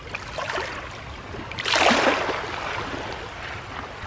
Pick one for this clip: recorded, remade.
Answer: recorded